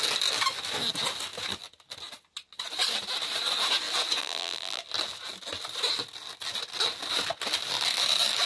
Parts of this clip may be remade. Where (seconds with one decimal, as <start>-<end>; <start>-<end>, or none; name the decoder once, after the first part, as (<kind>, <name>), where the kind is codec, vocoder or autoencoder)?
4.2-4.8 (vocoder, BigVGAN v2)